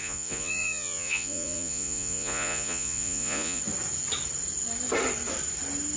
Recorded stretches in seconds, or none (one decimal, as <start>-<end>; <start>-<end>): 3.6-6.0